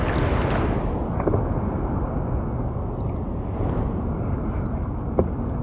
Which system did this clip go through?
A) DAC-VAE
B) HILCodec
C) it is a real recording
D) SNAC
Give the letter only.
C